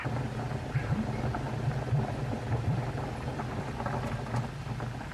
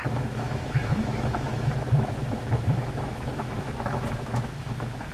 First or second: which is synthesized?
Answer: second